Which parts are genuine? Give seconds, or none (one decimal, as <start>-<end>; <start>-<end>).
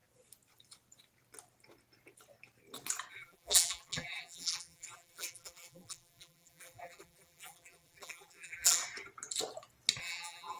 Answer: 0.0-3.1; 8.8-10.0